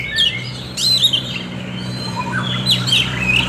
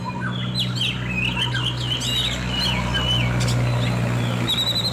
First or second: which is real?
second